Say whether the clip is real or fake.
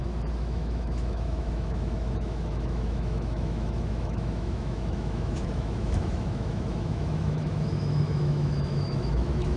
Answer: fake